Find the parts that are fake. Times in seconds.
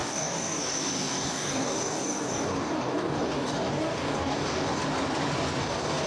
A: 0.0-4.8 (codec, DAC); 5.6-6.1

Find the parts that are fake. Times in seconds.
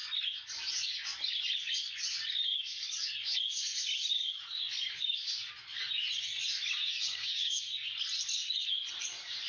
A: 6.9-7.5 (codec, DAC)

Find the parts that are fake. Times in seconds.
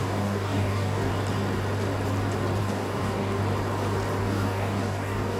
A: 0.0-1.1 (codec, DAC); 2.6-3.4; 4.2-5.4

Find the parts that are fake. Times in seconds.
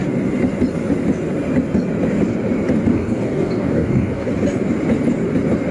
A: 2.9-4.3 (codec, DAC)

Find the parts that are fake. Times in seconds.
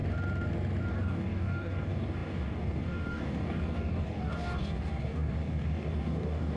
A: 0.9-6.6 (codec, DAC)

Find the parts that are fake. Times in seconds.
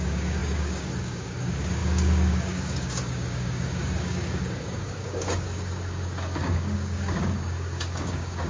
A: 0.0-8.5 (codec, DAC)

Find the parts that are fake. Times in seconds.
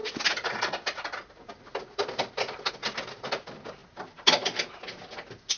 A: none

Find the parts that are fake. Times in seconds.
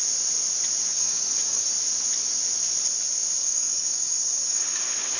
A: 0.9-1.7 (codec, DAC); 3.4-4.8